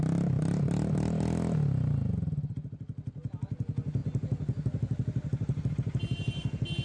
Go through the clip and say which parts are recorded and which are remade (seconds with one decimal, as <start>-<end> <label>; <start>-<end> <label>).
0.0-6.8 recorded